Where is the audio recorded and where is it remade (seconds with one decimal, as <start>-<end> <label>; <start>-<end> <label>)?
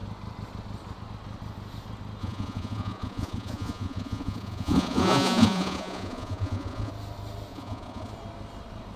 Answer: 0.0-2.2 recorded; 2.2-6.9 remade; 6.9-7.5 recorded; 7.5-8.1 remade; 8.1-9.0 recorded